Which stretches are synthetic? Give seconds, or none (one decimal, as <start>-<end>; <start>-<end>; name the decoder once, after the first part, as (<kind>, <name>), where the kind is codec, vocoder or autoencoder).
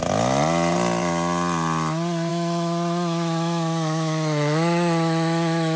2.3-5.8 (autoencoder, DAC-VAE)